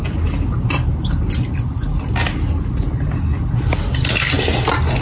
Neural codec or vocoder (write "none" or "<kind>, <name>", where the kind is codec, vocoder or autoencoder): none